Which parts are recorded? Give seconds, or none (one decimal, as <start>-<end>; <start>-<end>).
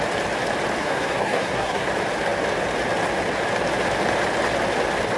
0.0-0.8; 1.9-5.2